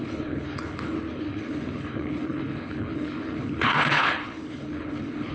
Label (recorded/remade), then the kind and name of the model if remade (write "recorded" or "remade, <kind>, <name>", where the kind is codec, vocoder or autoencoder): remade, codec, HILCodec